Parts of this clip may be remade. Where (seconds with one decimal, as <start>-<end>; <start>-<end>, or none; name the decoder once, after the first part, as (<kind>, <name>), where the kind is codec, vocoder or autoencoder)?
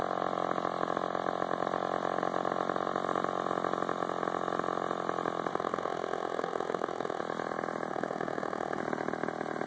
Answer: 5.5-7.2 (autoencoder, DAC-VAE); 7.9-8.8